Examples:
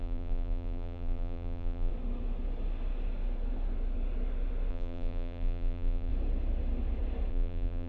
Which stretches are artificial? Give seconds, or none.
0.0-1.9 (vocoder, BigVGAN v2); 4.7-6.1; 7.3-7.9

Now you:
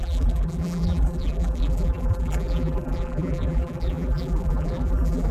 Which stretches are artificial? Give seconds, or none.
0.0-5.3 (vocoder, BigVGAN v2)

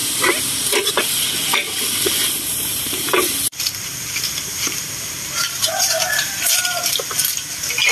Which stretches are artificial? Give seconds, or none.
0.0-0.9 (vocoder, BigVGAN v2); 2.5-7.2

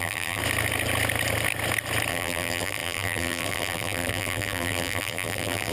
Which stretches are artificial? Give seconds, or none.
0.0-0.4 (vocoder, BigVGAN v2); 2.1-5.7